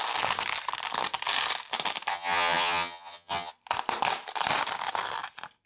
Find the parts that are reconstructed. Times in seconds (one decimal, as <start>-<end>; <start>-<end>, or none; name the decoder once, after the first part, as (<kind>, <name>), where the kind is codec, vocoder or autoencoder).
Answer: 2.1-3.5 (vocoder, HiFi-GAN)